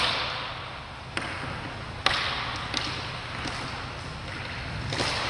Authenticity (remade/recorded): recorded